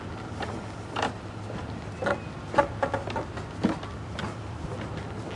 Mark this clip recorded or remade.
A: recorded